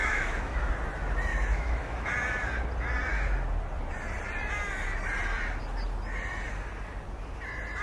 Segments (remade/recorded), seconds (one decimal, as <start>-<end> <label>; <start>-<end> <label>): 0.0-0.7 remade; 0.7-1.3 recorded; 1.3-2.1 remade; 2.1-7.8 recorded